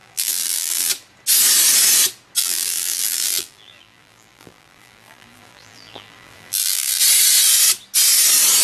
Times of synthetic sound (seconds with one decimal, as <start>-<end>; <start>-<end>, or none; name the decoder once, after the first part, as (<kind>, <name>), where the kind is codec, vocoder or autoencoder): 0.0-0.9 (vocoder, BigVGAN v2); 2.4-7.0